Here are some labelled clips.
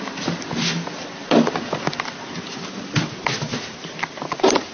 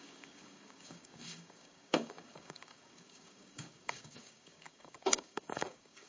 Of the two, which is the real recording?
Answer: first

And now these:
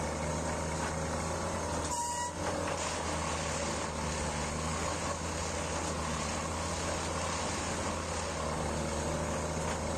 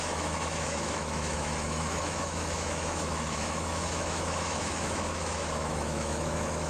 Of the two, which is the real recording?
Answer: first